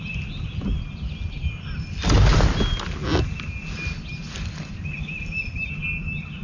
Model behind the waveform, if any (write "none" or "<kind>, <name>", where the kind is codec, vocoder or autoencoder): none